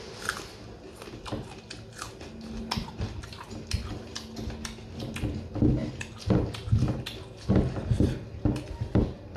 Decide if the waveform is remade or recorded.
recorded